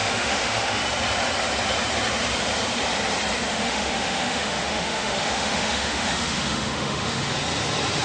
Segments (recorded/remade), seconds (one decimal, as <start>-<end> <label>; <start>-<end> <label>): 0.0-0.8 remade; 0.8-3.5 recorded; 3.5-7.3 remade; 7.3-8.0 recorded

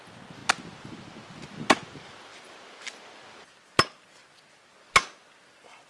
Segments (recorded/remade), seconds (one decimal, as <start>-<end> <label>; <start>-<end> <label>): 0.0-5.9 recorded

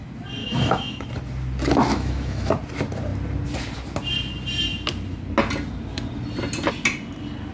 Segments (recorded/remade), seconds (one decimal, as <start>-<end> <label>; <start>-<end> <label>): 0.0-0.4 recorded; 0.4-1.1 remade; 1.1-1.9 recorded; 1.9-2.5 remade; 2.5-7.5 recorded

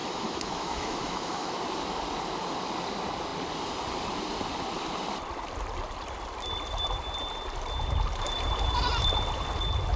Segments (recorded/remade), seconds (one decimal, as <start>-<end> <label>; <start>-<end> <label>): 0.0-1.5 remade; 1.5-10.0 recorded

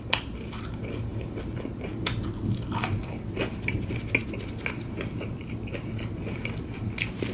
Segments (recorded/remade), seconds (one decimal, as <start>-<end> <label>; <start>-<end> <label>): 0.0-7.3 recorded

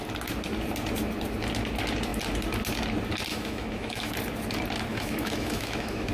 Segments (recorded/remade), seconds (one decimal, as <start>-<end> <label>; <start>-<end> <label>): 0.0-3.3 recorded; 3.3-4.1 remade; 4.1-4.9 recorded; 4.9-6.1 remade

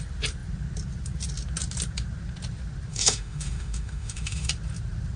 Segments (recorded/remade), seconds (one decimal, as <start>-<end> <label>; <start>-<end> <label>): 0.0-2.9 recorded; 2.9-4.5 remade; 4.5-5.2 recorded